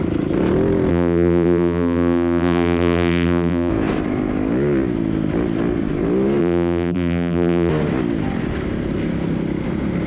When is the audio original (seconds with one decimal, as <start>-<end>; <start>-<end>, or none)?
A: 0.0-0.9; 3.7-6.4; 7.7-10.1